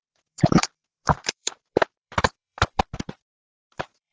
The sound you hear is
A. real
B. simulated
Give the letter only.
B